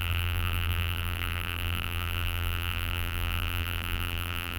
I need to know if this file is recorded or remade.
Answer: remade